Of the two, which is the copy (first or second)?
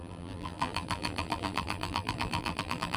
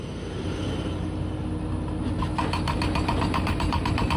first